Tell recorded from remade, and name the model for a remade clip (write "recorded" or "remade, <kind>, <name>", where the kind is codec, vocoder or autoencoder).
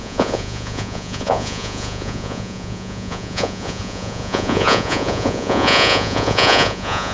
remade, vocoder, Vocos